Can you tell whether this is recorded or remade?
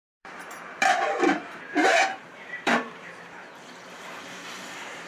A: remade